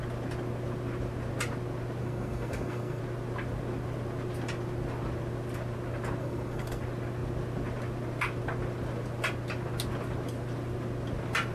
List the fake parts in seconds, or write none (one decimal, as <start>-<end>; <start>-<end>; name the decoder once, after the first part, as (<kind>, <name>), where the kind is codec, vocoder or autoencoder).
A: 2.0-3.0 (codec, SNAC); 6.2-6.8